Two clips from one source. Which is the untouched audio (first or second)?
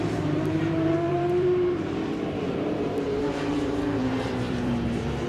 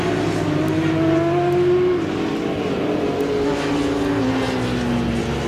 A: second